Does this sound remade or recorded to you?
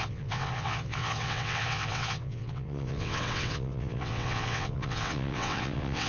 remade